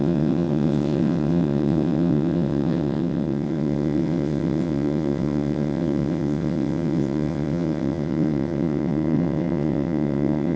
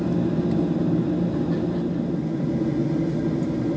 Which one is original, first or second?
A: second